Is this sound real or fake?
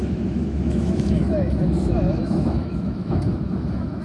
fake